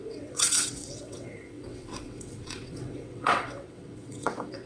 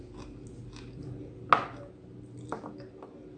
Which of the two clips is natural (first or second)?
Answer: second